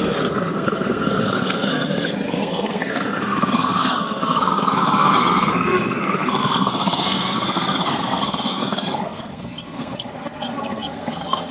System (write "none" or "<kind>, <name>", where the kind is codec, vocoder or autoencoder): codec, SNAC